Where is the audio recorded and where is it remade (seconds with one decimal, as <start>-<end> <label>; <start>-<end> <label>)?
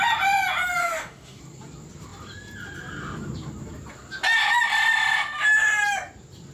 0.0-0.8 recorded; 0.8-1.4 remade; 1.4-6.5 recorded